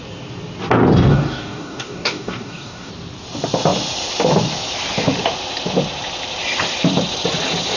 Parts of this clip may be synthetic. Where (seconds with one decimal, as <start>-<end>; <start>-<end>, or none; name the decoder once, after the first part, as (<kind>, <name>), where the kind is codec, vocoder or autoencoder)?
1.1-2.9 (codec, DAC)